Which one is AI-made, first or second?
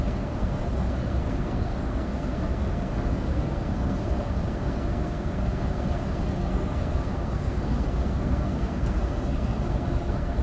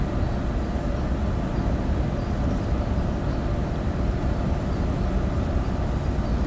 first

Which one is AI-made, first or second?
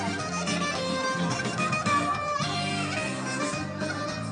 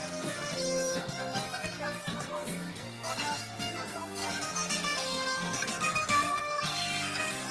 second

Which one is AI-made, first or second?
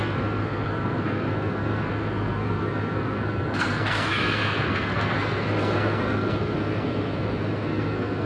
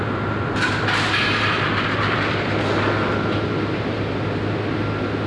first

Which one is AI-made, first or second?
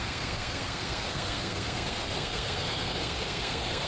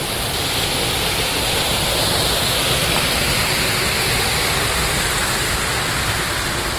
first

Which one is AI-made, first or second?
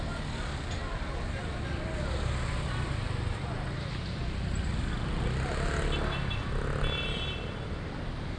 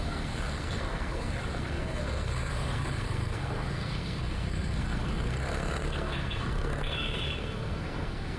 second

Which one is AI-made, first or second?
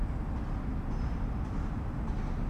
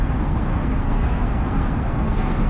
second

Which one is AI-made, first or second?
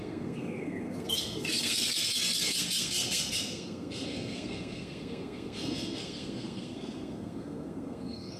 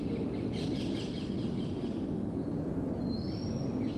first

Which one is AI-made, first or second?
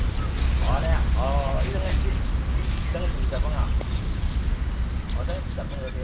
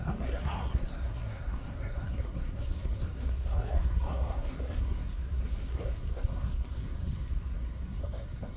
second